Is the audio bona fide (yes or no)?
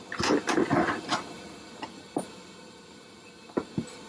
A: yes